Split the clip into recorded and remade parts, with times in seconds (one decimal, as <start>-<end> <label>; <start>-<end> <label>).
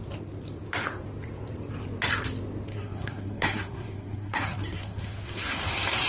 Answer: 0.0-2.7 recorded; 2.7-5.6 remade; 5.6-6.1 recorded